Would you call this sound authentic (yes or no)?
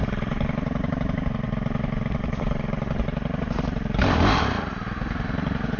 no